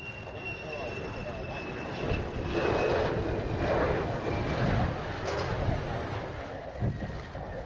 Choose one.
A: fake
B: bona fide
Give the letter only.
B